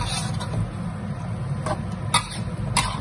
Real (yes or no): yes